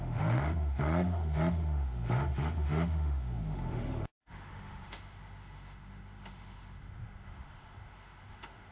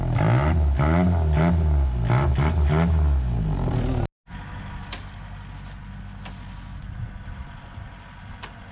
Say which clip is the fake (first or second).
first